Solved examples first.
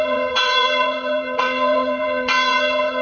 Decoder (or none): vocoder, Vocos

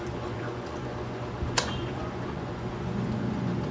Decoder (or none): vocoder, Vocos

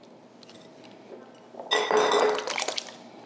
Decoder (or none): none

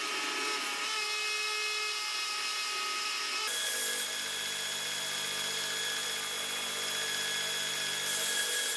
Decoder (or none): none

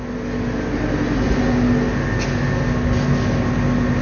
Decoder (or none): none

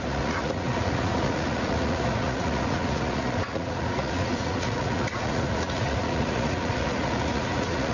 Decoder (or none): vocoder, Vocos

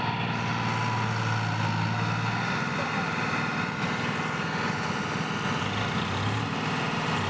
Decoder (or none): none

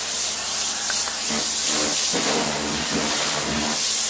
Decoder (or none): none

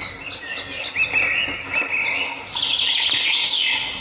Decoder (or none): none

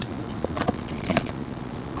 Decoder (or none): vocoder, Vocos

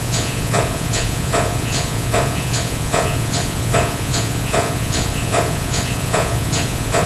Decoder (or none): vocoder, Vocos